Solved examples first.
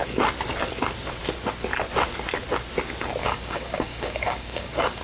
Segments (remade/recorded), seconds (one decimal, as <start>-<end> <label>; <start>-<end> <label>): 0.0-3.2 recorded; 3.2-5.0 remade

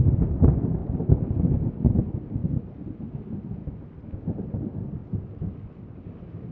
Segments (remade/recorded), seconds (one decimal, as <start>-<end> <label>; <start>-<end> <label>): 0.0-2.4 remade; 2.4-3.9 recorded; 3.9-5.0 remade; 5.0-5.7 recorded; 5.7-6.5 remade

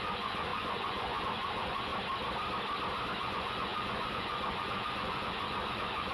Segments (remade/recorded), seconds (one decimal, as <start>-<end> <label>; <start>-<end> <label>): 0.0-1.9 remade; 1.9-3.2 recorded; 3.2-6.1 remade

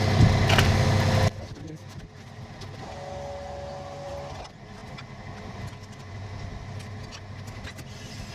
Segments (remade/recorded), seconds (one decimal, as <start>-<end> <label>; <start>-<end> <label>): 0.0-8.3 recorded

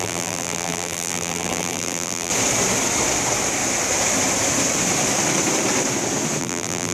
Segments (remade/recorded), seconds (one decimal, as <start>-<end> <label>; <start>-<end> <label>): 0.0-2.3 remade; 2.3-6.4 recorded; 6.4-6.9 remade

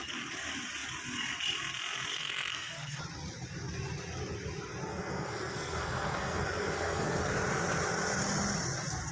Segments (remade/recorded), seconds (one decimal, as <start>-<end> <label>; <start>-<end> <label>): 0.0-2.1 recorded; 2.1-3.0 remade; 3.0-4.9 recorded; 4.9-7.3 remade; 7.3-9.1 recorded